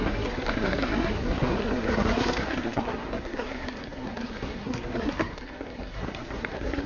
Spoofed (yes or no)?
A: yes